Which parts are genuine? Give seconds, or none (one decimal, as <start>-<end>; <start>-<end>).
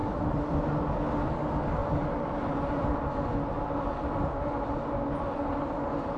0.5-1.8; 3.1-6.2